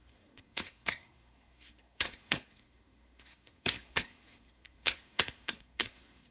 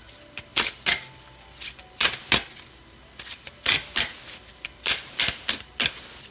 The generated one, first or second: first